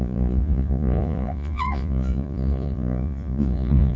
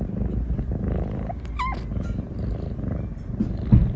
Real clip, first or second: second